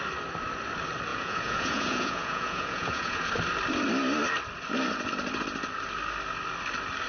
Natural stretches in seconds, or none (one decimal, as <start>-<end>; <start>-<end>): 0.0-1.1; 3.3-7.1